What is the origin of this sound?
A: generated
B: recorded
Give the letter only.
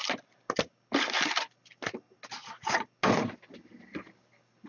B